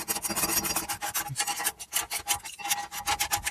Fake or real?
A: real